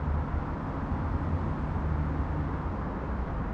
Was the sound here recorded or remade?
recorded